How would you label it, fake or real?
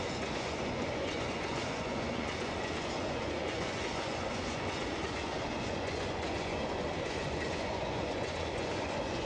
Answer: fake